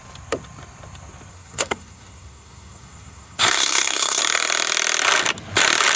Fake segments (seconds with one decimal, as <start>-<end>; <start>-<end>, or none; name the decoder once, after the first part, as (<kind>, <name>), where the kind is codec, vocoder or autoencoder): 1.3-4.2 (codec, SNAC)